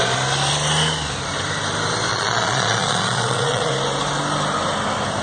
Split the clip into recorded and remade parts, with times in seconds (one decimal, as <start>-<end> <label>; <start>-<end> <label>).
0.0-2.1 recorded; 2.1-3.7 remade; 3.7-5.2 recorded